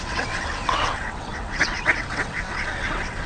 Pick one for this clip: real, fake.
fake